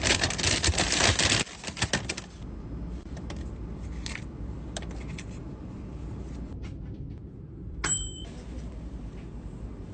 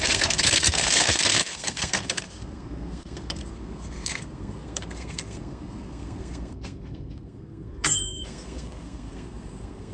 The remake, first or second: second